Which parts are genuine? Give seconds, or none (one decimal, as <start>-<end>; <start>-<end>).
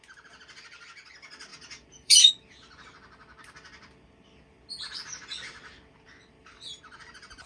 0.0-1.5; 2.3-6.4